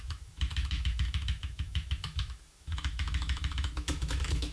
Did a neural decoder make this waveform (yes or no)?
yes